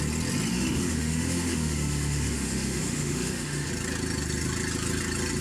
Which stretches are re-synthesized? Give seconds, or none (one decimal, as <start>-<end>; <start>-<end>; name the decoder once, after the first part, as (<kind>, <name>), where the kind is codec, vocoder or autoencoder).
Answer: 0.5-3.7 (autoencoder, DAC-VAE)